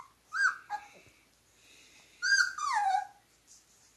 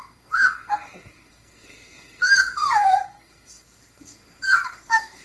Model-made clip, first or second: second